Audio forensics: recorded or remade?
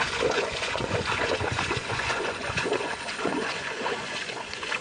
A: remade